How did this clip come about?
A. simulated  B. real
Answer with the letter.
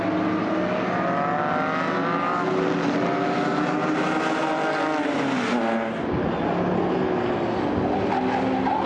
B